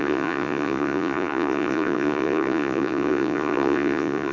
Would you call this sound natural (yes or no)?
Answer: no